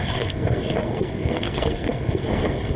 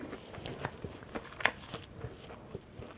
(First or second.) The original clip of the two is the second